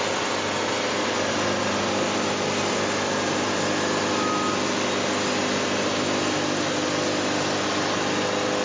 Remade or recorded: recorded